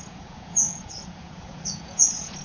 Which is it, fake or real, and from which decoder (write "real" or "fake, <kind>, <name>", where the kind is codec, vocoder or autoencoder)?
fake, vocoder, Vocos